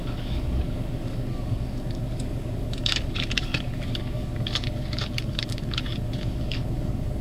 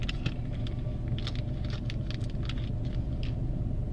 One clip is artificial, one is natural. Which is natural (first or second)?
second